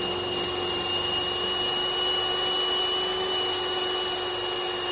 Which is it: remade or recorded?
recorded